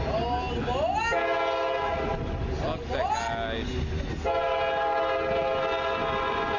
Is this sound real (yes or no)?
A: yes